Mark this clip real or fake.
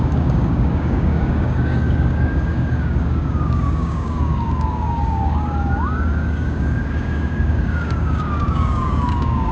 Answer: fake